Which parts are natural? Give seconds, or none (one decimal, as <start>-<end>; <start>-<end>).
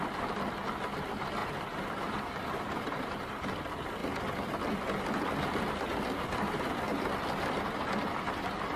0.0-1.4; 3.6-8.8